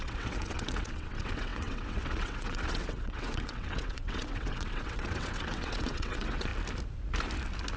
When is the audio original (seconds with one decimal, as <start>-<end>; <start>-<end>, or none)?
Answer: 6.5-7.8